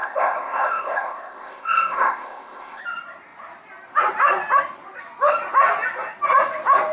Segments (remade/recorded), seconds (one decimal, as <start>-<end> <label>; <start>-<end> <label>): 0.0-2.8 remade; 2.8-6.9 recorded